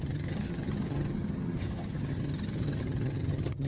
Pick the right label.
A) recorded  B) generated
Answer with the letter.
B